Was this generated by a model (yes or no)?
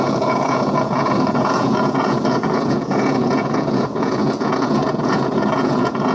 yes